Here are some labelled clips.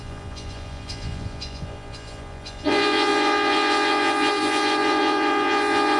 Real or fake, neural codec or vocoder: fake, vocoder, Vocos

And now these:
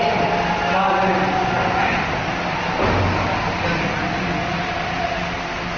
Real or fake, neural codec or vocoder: real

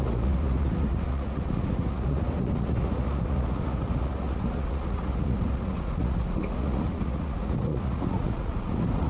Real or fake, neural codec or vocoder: fake, vocoder, Vocos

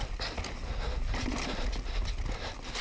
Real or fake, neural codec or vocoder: real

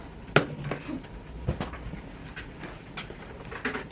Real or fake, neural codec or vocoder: real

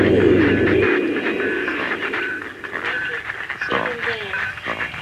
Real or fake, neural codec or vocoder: real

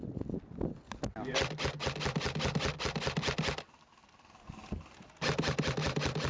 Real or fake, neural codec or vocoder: real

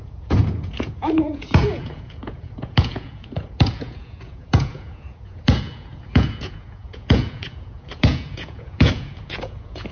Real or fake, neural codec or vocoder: fake, vocoder, Vocos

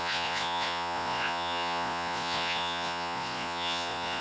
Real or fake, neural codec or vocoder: fake, vocoder, Vocos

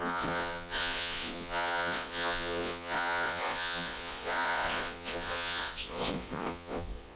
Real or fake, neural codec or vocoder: fake, vocoder, Vocos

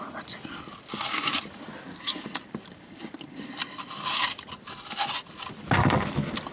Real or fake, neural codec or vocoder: real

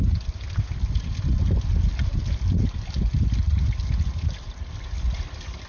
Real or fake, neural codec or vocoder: real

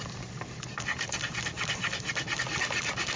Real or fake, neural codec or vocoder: real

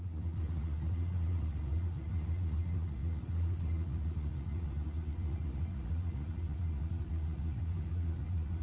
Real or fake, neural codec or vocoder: fake, vocoder, Vocos